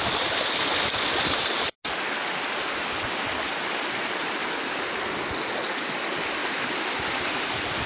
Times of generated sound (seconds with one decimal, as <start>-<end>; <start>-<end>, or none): none